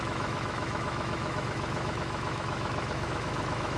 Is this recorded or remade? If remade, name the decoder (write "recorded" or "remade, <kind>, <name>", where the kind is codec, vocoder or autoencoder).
remade, autoencoder, DAC-VAE